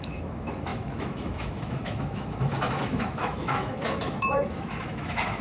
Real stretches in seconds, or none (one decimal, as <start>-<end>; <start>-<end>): none